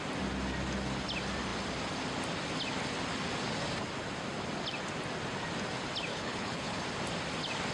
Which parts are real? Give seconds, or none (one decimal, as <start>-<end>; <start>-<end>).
0.0-6.1; 6.8-7.7